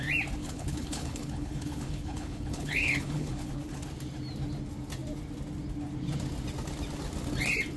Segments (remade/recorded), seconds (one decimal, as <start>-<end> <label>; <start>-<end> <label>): 0.0-0.4 recorded; 0.4-3.5 remade; 3.5-7.8 recorded